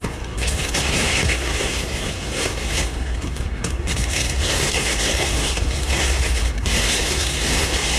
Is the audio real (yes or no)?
no